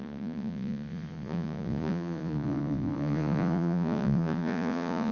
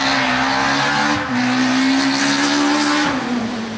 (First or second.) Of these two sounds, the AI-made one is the first